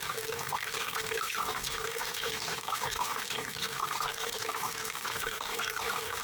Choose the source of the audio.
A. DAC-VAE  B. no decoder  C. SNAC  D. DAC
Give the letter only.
D